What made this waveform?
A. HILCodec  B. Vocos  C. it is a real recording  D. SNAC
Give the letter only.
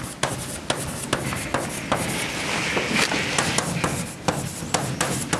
C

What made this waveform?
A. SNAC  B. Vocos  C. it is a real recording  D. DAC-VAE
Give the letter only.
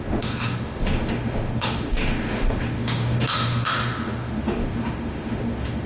D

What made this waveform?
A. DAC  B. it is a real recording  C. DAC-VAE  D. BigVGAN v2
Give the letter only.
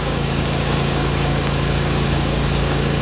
A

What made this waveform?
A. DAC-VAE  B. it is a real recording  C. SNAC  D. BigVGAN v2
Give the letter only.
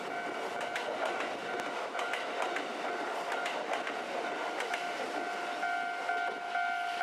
B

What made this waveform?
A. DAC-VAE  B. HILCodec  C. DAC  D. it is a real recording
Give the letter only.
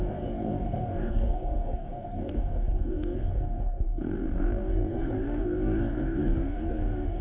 C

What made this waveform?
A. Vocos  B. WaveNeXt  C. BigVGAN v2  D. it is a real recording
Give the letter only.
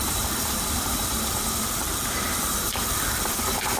C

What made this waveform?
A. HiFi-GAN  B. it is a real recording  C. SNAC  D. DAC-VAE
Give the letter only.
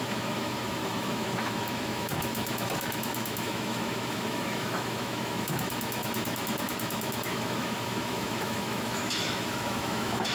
D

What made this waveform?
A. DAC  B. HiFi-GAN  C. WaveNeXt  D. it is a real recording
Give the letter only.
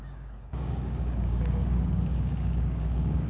A